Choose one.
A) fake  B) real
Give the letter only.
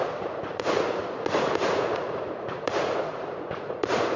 A